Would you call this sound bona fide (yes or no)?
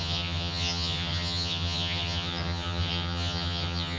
no